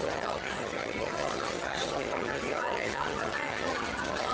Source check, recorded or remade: remade